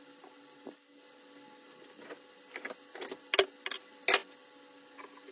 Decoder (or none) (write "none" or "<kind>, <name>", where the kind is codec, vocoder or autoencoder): none